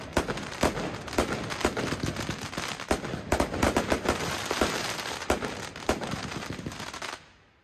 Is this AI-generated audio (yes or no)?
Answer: no